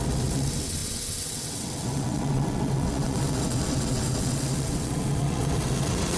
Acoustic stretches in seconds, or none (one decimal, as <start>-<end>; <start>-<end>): none